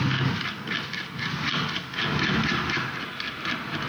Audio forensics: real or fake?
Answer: real